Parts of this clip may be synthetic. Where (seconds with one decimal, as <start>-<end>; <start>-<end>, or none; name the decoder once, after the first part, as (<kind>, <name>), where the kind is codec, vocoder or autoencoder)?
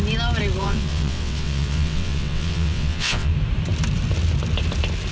0.6-3.3 (vocoder, WaveNeXt)